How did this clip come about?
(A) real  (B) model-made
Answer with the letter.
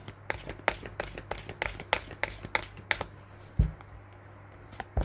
A